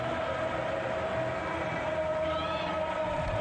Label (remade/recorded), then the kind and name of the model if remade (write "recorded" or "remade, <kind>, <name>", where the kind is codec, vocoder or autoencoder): recorded